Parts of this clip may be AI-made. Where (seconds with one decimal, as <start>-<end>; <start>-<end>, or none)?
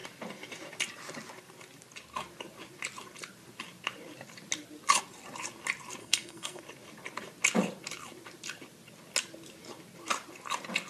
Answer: 6.0-6.6